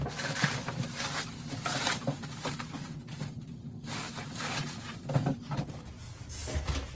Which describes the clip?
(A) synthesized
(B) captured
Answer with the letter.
B